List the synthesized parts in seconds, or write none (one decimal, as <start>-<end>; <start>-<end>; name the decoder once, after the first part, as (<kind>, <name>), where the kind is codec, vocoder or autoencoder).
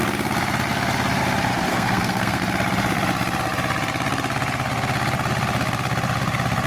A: 1.7-2.4 (codec, SNAC)